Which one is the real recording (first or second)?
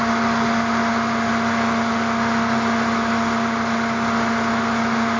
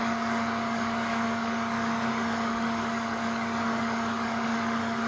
first